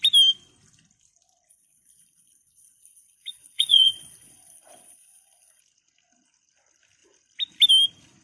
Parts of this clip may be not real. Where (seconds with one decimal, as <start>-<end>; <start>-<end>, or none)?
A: 1.5-5.6